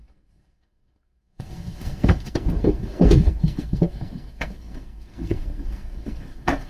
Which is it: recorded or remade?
remade